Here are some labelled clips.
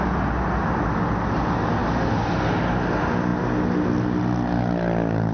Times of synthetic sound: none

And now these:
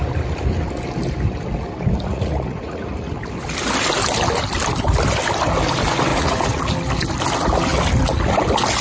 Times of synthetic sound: 2.1-3.1 (vocoder, Vocos); 6.1-6.6

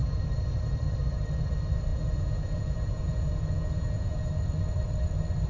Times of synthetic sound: 1.9-4.4 (vocoder, Vocos)

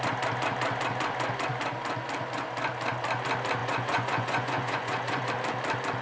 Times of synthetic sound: 3.6-5.3 (vocoder, Vocos)

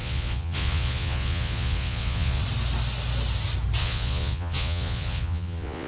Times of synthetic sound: 0.0-2.4 (vocoder, Vocos); 3.8-5.9

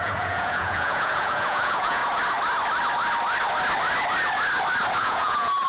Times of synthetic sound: 0.0-2.0 (vocoder, Vocos); 5.0-5.7

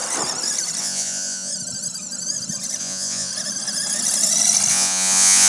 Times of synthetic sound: 0.8-1.5 (vocoder, Vocos); 2.8-3.3; 4.7-5.5